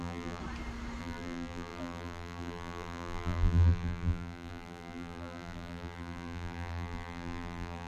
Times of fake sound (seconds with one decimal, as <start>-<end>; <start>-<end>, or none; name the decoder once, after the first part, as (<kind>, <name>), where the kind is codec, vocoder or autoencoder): 0.0-0.4 (vocoder, BigVGAN v2); 1.0-7.9